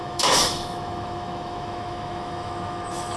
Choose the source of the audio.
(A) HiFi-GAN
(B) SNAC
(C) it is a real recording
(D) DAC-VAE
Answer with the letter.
D